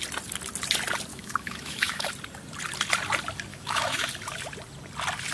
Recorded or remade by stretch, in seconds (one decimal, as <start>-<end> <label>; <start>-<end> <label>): 0.0-1.1 recorded; 1.1-2.1 remade; 2.1-3.5 recorded; 3.5-4.1 remade; 4.1-5.3 recorded